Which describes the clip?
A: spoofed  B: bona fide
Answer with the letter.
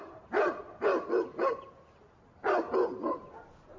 B